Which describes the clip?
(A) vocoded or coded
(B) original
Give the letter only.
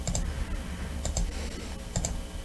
B